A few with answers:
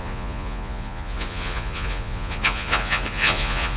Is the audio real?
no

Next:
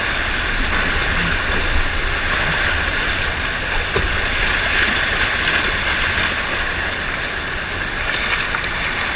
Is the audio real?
yes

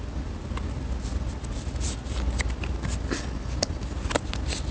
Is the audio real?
yes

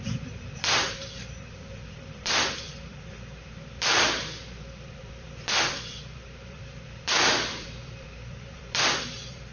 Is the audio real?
no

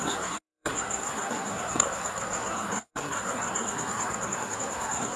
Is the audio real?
no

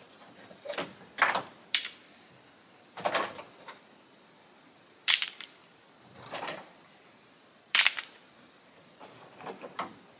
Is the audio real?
no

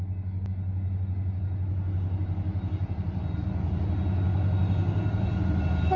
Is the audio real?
yes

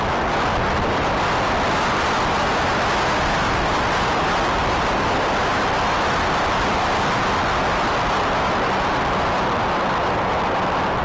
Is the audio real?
yes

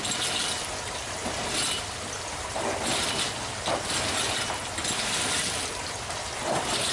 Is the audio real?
yes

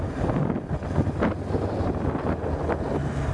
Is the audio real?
yes